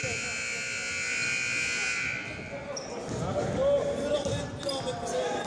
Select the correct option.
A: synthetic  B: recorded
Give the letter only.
B